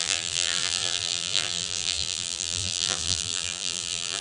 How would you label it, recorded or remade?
remade